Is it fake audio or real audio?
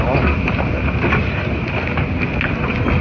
real